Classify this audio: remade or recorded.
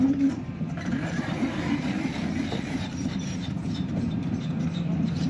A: remade